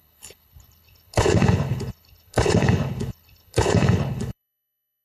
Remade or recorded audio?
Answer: remade